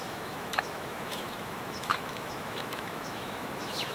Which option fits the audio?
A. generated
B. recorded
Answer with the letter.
A